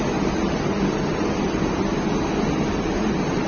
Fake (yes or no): no